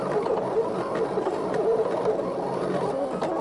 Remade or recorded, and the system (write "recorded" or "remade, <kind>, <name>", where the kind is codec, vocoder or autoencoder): recorded